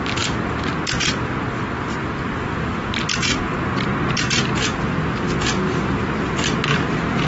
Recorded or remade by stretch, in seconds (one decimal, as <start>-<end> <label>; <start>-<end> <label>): 0.0-6.7 recorded; 6.7-7.3 remade